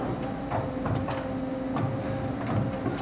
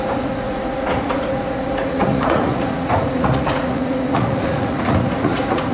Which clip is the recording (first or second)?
first